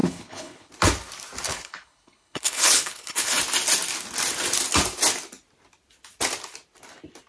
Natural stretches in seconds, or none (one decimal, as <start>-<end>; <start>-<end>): 0.7-1.5; 3.4-7.3